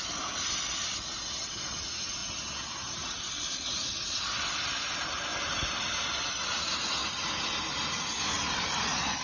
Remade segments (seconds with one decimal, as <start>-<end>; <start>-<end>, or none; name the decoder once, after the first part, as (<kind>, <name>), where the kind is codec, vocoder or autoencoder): none